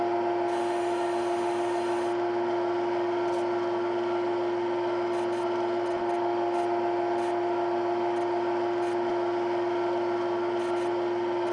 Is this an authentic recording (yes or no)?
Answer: yes